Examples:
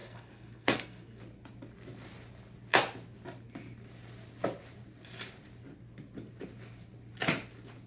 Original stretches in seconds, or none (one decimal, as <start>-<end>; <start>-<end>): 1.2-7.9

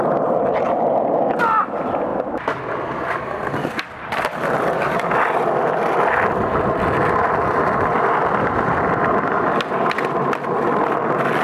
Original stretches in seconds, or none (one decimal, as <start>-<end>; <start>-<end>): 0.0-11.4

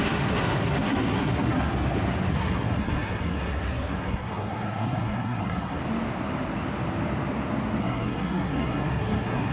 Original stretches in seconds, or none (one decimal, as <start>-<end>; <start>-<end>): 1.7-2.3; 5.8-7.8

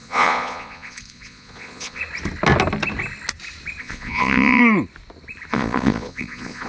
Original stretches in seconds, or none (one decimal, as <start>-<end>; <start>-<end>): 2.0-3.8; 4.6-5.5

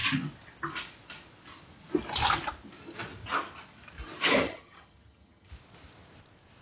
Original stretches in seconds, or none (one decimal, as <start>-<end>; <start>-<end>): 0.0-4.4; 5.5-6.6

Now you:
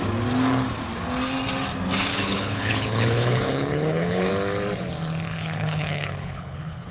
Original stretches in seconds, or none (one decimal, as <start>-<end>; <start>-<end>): 0.0-2.1; 4.3-5.3

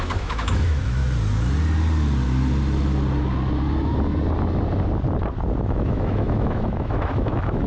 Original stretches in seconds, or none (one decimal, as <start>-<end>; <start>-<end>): 1.0-5.6

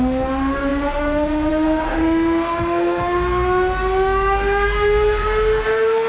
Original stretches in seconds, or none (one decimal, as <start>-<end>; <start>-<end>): none